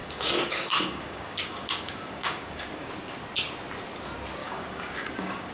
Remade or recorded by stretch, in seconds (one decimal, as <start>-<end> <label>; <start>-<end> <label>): 0.0-2.9 remade; 2.9-4.4 recorded; 4.4-5.5 remade